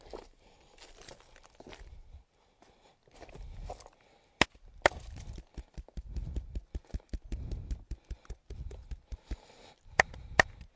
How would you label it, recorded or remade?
recorded